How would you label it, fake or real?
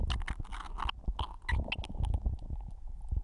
real